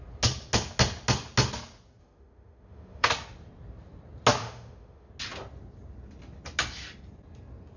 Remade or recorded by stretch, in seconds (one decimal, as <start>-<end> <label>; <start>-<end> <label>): 0.0-2.0 recorded; 2.0-3.1 remade; 3.1-4.4 recorded; 4.4-5.1 remade; 5.1-7.8 recorded